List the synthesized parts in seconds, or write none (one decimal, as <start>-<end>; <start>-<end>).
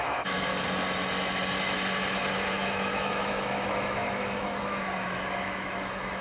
0.0-0.5; 1.6-6.2